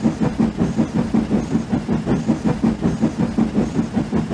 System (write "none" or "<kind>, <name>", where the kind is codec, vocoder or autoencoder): none